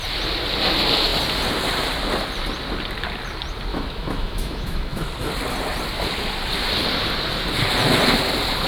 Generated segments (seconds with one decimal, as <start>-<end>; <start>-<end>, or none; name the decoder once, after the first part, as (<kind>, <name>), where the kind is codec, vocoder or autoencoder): 3.7-5.1 (autoencoder, DAC-VAE)